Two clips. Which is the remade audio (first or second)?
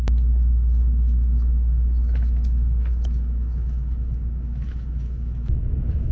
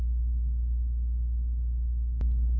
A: first